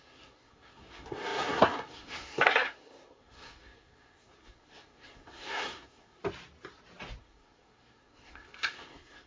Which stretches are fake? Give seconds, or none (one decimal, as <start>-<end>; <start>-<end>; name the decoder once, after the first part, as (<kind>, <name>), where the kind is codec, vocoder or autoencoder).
0.0-6.2 (codec, SNAC); 7.2-9.3